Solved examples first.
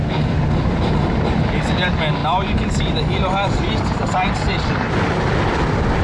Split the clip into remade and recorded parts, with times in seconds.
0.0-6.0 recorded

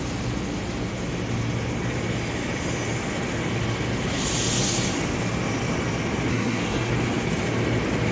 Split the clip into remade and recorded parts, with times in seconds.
0.0-6.3 recorded; 6.3-6.9 remade; 6.9-8.1 recorded